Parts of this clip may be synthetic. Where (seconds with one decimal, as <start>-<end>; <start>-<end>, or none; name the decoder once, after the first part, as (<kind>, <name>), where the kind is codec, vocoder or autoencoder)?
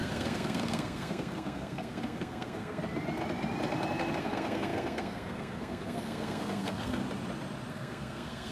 0.0-2.8 (codec, SNAC); 4.2-7.0; 7.7-8.5